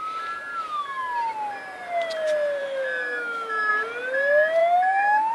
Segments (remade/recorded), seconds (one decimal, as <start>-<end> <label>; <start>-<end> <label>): 0.0-2.6 recorded; 2.6-3.7 remade; 3.7-4.6 recorded; 4.6-5.3 remade